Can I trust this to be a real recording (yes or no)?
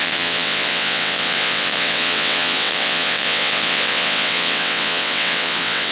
no